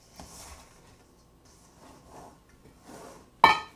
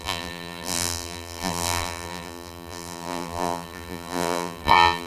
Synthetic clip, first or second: second